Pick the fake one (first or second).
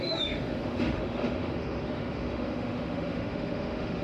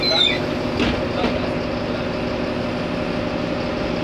first